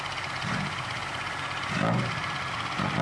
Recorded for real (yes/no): yes